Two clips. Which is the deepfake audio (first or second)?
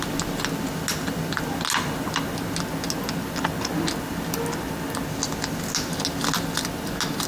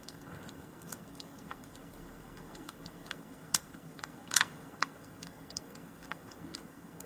second